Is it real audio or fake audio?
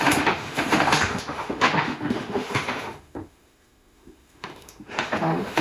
fake